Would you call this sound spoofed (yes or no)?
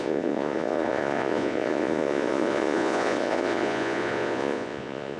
yes